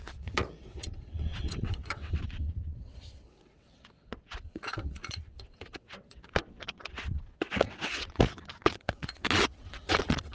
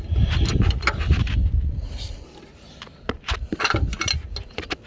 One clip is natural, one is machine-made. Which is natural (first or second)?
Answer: second